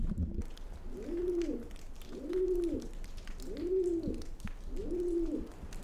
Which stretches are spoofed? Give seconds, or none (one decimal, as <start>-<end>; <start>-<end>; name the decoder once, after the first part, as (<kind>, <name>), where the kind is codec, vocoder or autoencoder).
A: none